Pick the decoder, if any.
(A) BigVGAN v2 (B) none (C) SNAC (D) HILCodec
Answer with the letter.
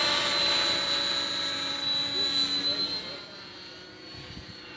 B